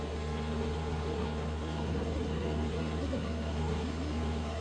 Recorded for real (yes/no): no